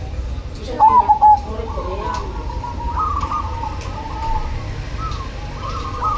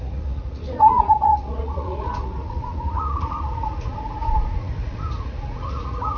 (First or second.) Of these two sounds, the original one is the first